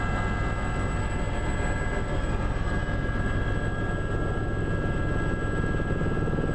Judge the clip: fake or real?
real